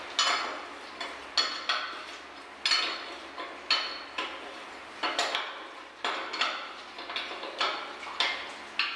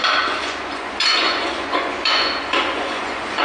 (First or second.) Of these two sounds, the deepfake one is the second